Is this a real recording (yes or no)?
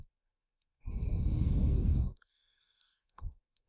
no